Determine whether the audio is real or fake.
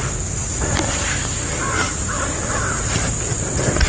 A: real